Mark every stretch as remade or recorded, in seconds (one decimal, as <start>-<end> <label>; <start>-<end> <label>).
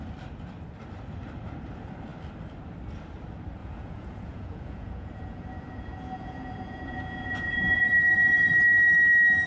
0.0-3.6 recorded; 3.6-7.8 remade; 7.8-9.5 recorded